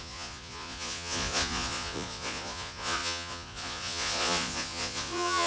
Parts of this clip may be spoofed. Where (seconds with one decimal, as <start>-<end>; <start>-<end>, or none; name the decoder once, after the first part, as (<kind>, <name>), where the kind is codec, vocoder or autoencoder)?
0.0-5.5 (vocoder, Vocos)